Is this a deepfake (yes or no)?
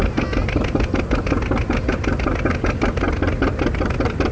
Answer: no